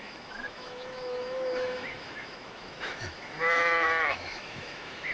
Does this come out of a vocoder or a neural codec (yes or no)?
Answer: yes